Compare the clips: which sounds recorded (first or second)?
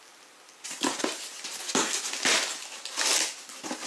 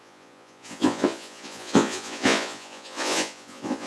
first